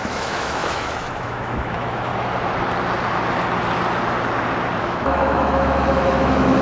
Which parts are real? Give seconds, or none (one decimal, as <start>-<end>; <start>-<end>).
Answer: 2.1-4.8

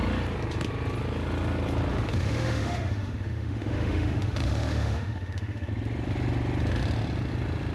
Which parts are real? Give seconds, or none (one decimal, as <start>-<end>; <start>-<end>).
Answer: 0.0-1.9; 5.7-7.7

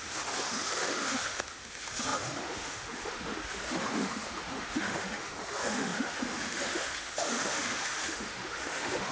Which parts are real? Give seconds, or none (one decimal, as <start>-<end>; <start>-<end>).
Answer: none

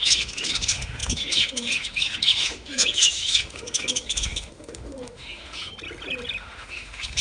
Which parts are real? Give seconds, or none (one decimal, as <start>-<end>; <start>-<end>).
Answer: 5.7-6.4

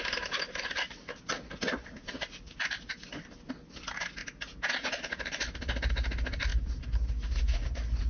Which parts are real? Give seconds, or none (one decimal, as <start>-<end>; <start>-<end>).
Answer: 0.0-8.1

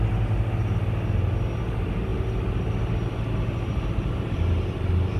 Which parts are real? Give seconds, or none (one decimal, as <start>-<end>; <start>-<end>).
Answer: 0.0-5.2

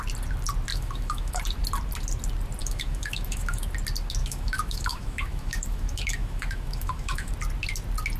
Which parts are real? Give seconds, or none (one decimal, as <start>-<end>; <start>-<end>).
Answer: 0.0-0.7; 1.4-2.6; 3.7-4.2; 7.3-8.2